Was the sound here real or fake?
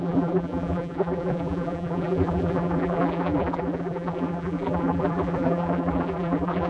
fake